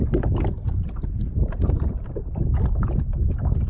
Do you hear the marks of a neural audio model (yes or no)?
no